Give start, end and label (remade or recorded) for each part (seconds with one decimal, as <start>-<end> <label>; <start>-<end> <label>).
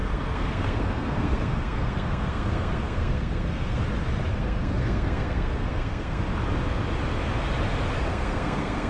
0.0-3.8 remade; 3.8-4.3 recorded; 4.3-6.2 remade; 6.2-8.1 recorded; 8.1-8.9 remade